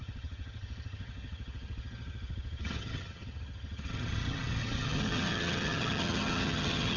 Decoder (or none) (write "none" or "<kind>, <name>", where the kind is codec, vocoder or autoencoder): vocoder, HiFi-GAN